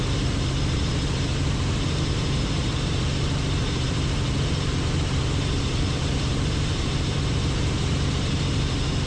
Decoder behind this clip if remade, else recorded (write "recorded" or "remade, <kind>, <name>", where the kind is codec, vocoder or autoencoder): remade, vocoder, BigVGAN v2